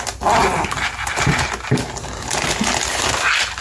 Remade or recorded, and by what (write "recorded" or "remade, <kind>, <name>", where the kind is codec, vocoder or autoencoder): recorded